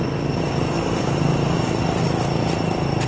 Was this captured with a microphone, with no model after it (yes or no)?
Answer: yes